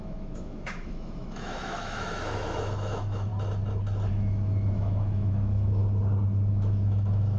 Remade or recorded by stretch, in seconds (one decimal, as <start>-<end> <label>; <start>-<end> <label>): 0.0-3.3 remade; 3.3-4.1 recorded; 4.1-5.8 remade; 5.8-6.5 recorded; 6.5-7.4 remade